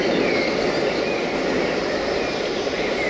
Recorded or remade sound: recorded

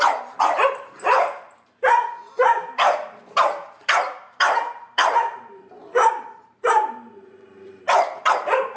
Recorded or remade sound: remade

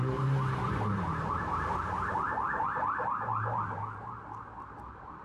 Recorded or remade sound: remade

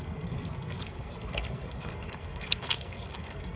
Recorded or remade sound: remade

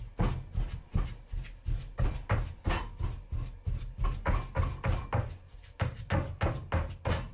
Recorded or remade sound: recorded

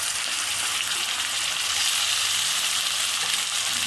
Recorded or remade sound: remade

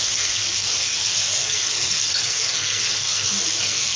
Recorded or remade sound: remade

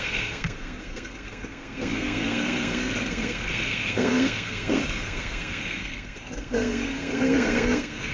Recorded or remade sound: remade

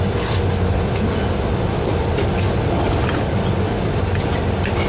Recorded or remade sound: recorded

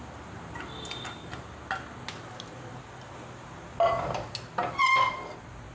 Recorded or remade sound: recorded